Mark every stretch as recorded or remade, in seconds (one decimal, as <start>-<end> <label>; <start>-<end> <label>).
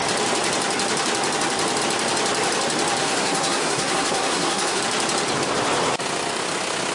0.0-3.0 recorded; 3.0-4.8 remade; 4.8-6.9 recorded